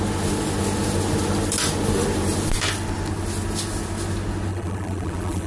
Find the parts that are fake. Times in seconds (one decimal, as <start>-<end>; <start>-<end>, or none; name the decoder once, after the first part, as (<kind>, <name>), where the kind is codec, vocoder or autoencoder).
4.5-5.5 (vocoder, BigVGAN v2)